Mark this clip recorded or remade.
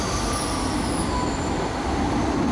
recorded